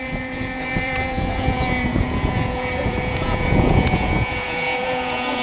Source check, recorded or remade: remade